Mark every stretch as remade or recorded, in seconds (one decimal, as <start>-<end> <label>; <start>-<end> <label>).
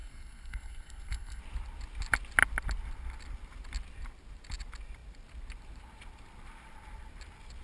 0.0-1.4 remade; 1.4-7.6 recorded